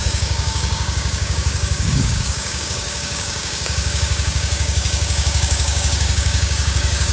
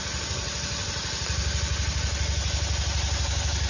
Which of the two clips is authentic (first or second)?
second